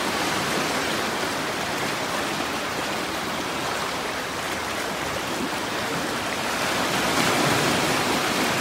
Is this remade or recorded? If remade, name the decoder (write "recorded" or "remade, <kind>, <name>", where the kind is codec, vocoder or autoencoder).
recorded